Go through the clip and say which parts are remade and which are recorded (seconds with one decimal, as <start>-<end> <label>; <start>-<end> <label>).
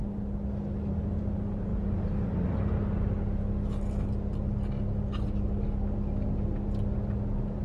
0.0-7.6 recorded